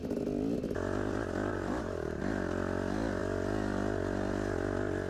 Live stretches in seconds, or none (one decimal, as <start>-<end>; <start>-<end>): 0.0-1.5; 2.2-5.1